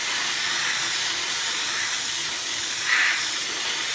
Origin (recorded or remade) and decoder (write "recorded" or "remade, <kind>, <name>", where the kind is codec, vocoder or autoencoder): recorded